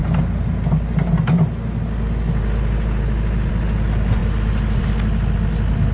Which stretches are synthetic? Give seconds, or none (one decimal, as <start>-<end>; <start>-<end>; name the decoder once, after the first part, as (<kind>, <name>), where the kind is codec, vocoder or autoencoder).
none